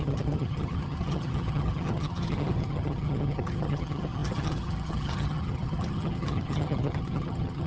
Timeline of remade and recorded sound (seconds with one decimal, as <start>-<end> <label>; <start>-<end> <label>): 0.0-7.7 remade